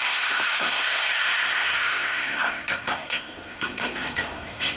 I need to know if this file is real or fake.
fake